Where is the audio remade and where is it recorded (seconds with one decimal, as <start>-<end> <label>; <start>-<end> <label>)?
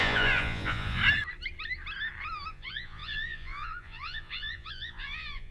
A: 0.0-1.0 remade; 1.0-2.5 recorded; 2.5-5.5 remade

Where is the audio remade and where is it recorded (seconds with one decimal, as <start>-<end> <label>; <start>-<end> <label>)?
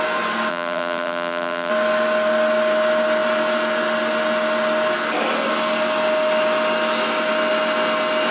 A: 0.0-0.5 recorded; 0.5-1.7 remade; 1.7-8.3 recorded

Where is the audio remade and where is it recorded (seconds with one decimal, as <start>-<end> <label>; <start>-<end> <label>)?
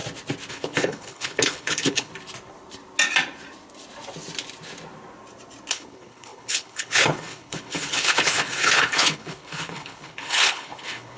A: 0.0-0.5 recorded; 0.5-2.1 remade; 2.1-5.7 recorded; 5.7-11.2 remade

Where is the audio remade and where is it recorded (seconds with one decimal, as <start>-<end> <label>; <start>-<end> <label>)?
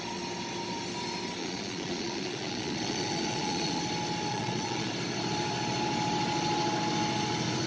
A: 0.0-1.4 recorded; 1.4-3.8 remade; 3.8-4.3 recorded; 4.3-4.9 remade; 4.9-7.7 recorded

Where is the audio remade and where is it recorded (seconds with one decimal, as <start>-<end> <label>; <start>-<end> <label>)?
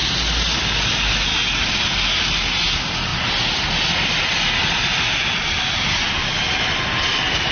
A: 0.0-7.5 recorded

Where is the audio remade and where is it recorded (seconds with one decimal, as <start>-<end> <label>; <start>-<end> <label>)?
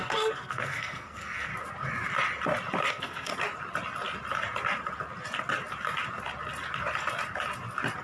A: 0.0-1.5 remade; 1.5-2.9 recorded; 2.9-3.3 remade; 3.3-8.0 recorded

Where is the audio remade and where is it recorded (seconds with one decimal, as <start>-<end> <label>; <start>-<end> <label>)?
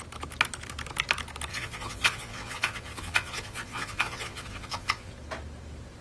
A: 0.0-1.5 recorded; 1.5-5.1 remade; 5.1-6.0 recorded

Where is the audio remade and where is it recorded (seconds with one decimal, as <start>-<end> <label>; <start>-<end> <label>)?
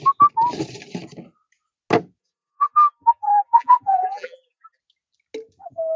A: 0.0-2.2 recorded; 2.2-4.8 remade; 4.8-6.0 recorded